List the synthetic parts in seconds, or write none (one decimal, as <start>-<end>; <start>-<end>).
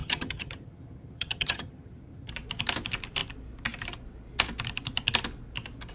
0.0-2.3